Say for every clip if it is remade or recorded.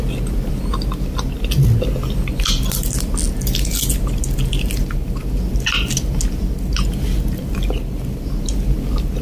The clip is recorded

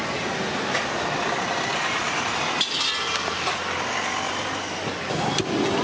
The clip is recorded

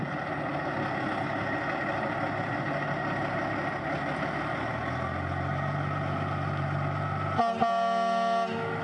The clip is recorded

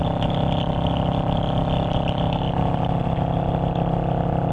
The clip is recorded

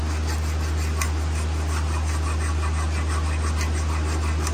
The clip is recorded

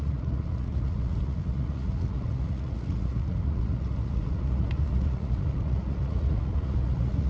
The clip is remade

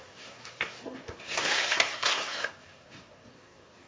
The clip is remade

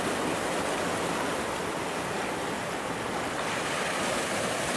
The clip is recorded